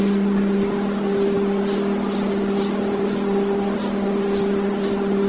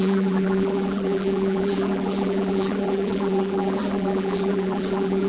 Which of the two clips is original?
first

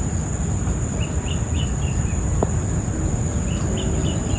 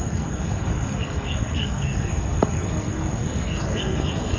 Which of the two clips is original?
first